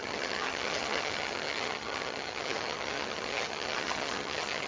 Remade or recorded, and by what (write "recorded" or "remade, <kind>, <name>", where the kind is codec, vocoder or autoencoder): remade, vocoder, HiFi-GAN